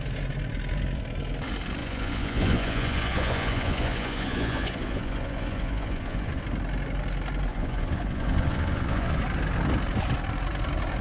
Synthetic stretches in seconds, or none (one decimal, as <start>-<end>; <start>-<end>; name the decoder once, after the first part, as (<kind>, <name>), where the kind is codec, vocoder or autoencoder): 1.8-6.4 (vocoder, Vocos); 7.5-9.2

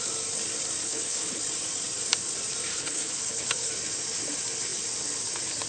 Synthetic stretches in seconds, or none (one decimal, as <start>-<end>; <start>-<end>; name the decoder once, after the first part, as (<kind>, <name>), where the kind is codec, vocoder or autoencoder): 0.8-1.4 (codec, HILCodec); 2.7-3.7